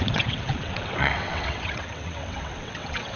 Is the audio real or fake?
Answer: fake